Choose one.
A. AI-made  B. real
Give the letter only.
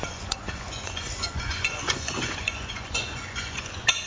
A